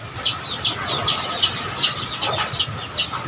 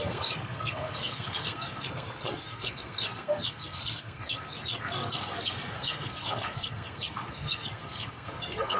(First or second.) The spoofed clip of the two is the second